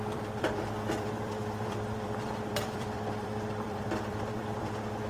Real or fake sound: fake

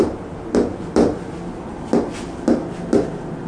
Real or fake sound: real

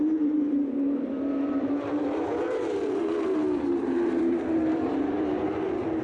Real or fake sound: fake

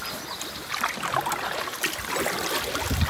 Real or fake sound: real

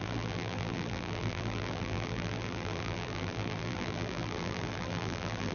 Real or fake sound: fake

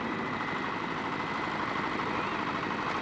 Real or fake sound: real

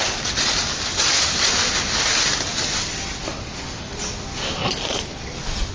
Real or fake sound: real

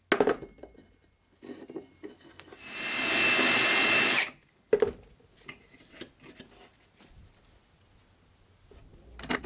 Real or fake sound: real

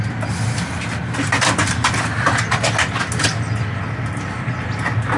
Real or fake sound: real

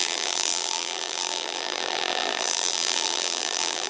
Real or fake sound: fake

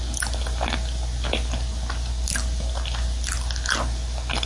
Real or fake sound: real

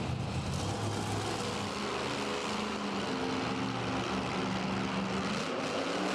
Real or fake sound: real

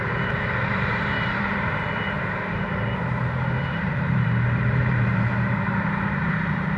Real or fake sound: fake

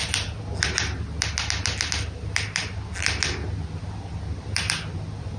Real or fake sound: real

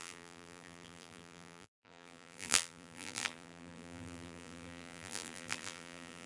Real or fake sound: fake